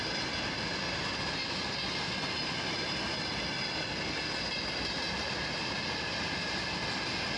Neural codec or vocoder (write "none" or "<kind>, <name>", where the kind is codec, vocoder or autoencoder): none